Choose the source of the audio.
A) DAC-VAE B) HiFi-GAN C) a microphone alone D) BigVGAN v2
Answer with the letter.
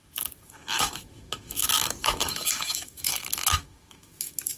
A